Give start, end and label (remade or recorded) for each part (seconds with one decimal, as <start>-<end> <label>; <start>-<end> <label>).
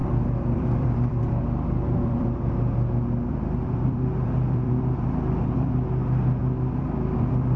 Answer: 0.0-2.5 remade; 2.5-3.3 recorded; 3.3-5.7 remade; 5.7-6.4 recorded; 6.4-7.6 remade